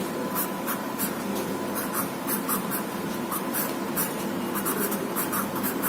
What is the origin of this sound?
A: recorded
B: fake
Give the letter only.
B